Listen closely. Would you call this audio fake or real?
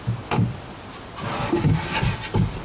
real